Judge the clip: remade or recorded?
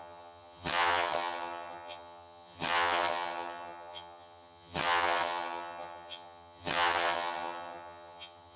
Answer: remade